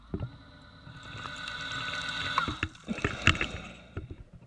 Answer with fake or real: real